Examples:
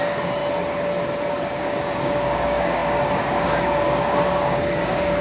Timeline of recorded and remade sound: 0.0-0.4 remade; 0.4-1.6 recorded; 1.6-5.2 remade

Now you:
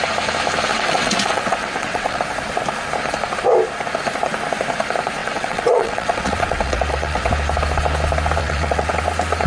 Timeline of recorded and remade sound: 0.0-0.7 recorded; 0.7-2.2 remade; 2.2-5.2 recorded; 5.2-7.3 remade; 7.3-8.4 recorded; 8.4-9.0 remade; 9.0-9.5 recorded